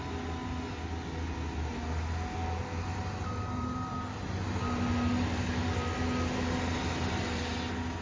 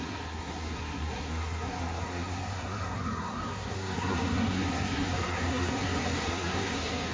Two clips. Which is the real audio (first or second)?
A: first